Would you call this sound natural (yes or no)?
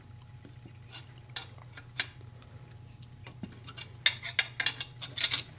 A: yes